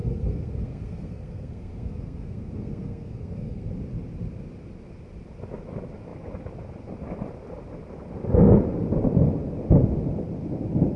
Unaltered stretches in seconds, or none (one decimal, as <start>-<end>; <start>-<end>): 3.7-11.0